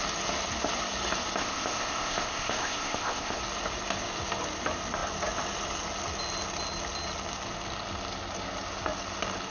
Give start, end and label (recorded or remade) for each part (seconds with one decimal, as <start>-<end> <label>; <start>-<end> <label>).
0.0-1.4 recorded; 1.4-3.4 remade; 3.4-9.5 recorded